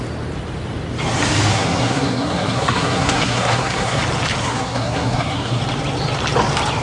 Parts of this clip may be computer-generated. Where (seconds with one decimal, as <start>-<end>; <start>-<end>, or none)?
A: 1.5-4.0; 4.4-5.6